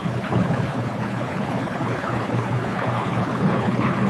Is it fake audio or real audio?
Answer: fake